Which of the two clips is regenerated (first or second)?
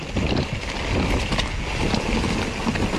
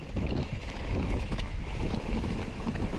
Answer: second